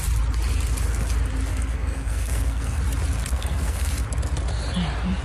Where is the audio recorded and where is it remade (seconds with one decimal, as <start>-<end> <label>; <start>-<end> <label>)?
0.0-1.5 recorded; 1.5-2.8 remade; 2.8-3.3 recorded; 3.3-3.9 remade; 3.9-5.2 recorded